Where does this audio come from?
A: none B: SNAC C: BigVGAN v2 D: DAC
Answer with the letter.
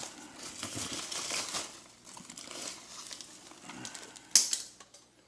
A